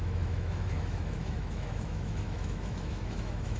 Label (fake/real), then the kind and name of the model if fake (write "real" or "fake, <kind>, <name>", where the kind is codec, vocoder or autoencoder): fake, autoencoder, DAC-VAE